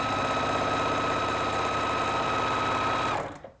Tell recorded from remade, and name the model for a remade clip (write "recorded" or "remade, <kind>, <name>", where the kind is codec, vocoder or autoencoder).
recorded